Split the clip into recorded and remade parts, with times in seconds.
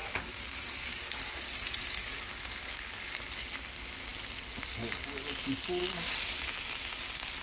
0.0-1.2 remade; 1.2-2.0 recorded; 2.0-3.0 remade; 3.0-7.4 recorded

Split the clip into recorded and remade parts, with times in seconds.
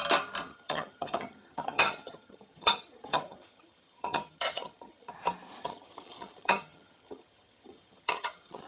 0.0-0.5 recorded; 0.5-5.1 remade; 5.1-5.6 recorded; 5.6-8.7 remade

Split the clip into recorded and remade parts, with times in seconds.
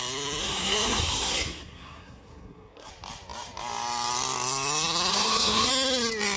0.0-0.4 recorded; 0.4-2.9 remade; 2.9-5.1 recorded; 5.1-5.7 remade; 5.7-6.4 recorded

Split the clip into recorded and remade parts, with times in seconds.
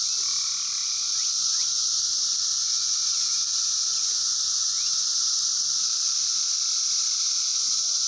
0.0-0.8 recorded; 0.8-1.9 remade; 1.9-2.7 recorded; 2.7-5.5 remade; 5.5-7.5 recorded; 7.5-8.1 remade